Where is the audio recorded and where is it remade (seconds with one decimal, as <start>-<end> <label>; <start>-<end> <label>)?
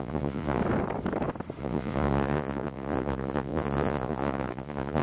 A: 0.0-0.6 remade; 0.6-1.6 recorded; 1.6-5.0 remade